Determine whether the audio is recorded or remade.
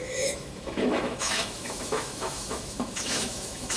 remade